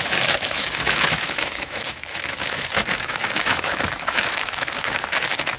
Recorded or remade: remade